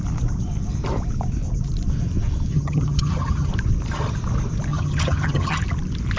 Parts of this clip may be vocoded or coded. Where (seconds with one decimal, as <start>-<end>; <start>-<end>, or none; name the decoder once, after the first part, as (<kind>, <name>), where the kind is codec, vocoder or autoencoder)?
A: 2.5-3.5 (vocoder, HiFi-GAN); 4.7-5.6